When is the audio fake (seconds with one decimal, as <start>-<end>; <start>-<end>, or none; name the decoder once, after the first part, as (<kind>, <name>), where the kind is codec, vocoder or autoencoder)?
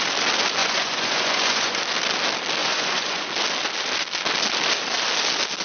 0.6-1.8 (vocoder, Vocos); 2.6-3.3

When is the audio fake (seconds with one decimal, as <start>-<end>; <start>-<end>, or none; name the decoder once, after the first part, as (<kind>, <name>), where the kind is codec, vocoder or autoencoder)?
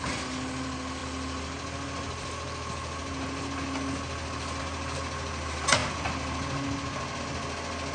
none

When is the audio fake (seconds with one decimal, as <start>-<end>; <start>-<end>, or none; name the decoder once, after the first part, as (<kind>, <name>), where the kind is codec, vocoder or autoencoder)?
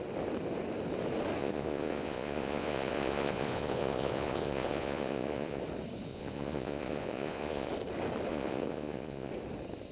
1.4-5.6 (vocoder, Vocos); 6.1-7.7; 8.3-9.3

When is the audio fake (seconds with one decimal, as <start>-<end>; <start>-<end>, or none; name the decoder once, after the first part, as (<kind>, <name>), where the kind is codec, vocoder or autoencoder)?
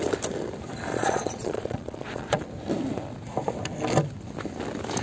0.9-2.5 (vocoder, Vocos)